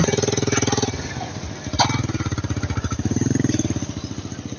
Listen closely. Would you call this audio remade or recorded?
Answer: recorded